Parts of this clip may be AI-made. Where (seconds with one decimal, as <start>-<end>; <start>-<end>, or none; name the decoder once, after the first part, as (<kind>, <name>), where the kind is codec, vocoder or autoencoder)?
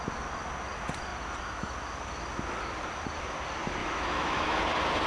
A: 3.8-4.6 (autoencoder, DAC-VAE)